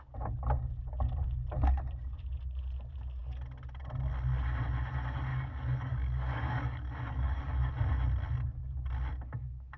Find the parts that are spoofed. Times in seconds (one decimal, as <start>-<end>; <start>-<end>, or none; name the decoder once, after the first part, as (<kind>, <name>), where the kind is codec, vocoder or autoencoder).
5.3-7.7 (codec, DAC)